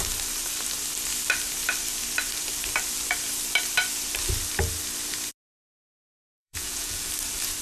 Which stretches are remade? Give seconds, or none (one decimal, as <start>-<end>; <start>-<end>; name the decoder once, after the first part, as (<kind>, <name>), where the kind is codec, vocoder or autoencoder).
5.6-7.1 (vocoder, Vocos)